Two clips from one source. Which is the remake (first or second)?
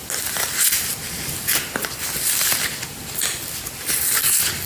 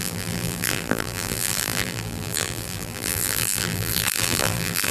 second